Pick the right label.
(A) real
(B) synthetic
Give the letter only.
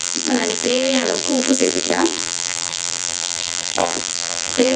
B